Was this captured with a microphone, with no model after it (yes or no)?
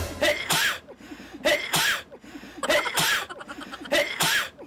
no